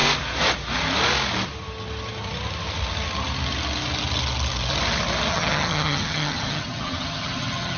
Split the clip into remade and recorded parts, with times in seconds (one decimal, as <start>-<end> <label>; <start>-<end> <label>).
0.0-5.3 recorded; 5.3-7.8 remade